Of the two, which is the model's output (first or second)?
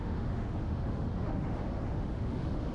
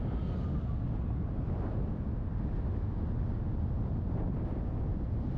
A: first